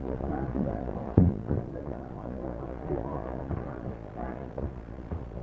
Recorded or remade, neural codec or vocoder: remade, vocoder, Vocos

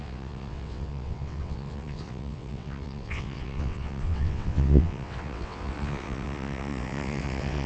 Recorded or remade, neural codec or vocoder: remade, vocoder, WaveNeXt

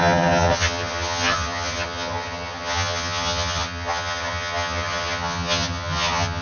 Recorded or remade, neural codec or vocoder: remade, vocoder, HiFi-GAN